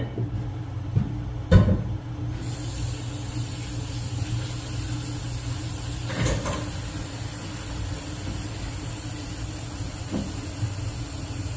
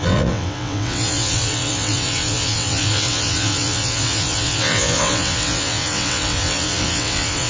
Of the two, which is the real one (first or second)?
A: first